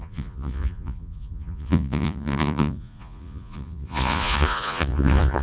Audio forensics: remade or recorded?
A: remade